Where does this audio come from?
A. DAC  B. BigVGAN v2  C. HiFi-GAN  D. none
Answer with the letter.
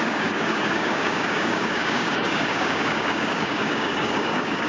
A